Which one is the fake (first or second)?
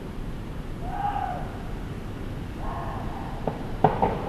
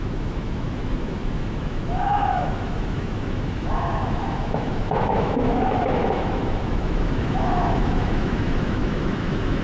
second